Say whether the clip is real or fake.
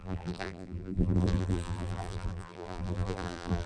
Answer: fake